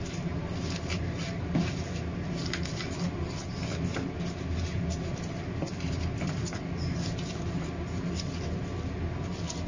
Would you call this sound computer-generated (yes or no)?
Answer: no